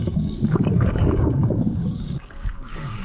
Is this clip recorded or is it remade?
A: remade